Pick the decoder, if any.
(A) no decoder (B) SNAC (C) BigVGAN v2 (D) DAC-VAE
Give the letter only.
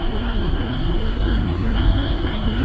B